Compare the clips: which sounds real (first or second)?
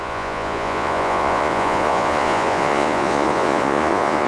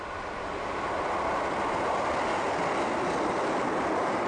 second